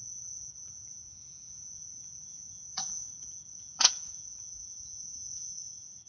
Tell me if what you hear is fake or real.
fake